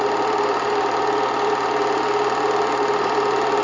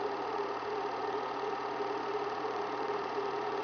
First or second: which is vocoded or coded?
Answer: second